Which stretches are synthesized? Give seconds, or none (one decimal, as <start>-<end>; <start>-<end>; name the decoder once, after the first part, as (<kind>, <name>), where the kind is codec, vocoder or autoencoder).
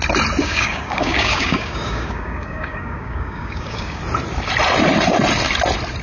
0.4-4.0 (codec, DAC)